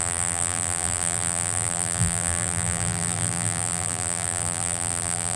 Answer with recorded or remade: remade